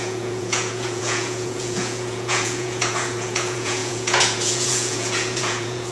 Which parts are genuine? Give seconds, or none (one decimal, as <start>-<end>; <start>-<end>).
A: none